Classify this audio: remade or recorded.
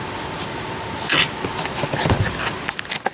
recorded